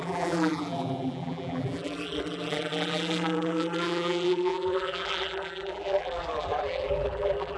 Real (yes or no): no